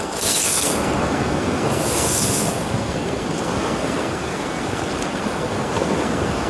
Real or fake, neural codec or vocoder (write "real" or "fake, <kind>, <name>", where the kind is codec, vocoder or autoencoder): fake, codec, SNAC